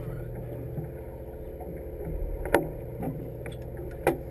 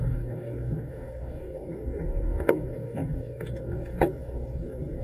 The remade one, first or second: second